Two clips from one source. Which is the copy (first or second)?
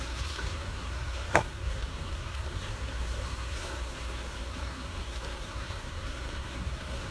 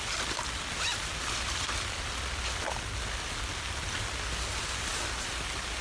first